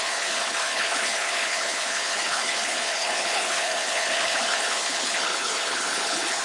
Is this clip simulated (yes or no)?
yes